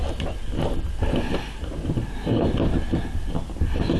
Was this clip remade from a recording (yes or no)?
no